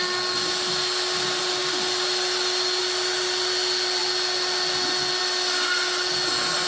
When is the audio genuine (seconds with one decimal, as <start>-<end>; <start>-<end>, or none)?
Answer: 0.0-6.7